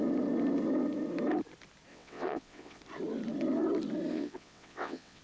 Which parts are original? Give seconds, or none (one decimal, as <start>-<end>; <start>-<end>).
0.0-1.9; 2.8-4.1